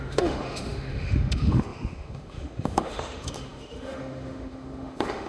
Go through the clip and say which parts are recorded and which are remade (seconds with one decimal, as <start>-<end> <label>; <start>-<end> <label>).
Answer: 0.0-5.3 remade